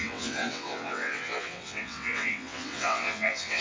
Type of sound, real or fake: fake